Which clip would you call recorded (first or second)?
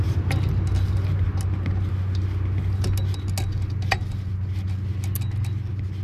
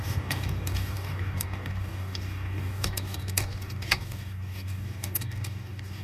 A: first